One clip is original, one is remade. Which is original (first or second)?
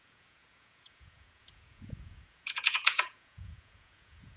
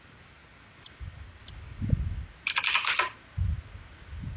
second